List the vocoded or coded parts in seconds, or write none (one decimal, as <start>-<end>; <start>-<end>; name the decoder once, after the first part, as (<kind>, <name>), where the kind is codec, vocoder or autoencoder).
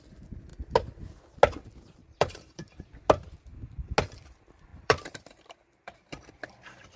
2.0-2.9 (vocoder, BigVGAN v2); 4.7-6.3